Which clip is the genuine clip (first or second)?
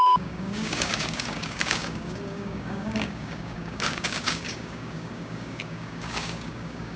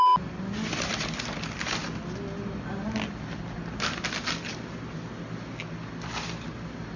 second